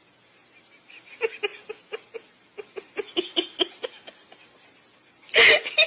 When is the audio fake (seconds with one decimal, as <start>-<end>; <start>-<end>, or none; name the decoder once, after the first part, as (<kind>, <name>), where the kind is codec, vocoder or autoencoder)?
none